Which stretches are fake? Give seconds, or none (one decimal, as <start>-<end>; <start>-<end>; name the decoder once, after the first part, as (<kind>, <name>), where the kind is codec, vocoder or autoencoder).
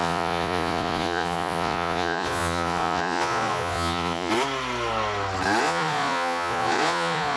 0.0-4.3 (vocoder, Vocos); 5.6-7.4